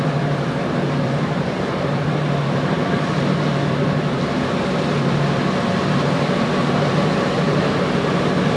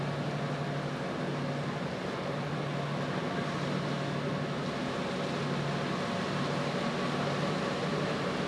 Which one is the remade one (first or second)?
first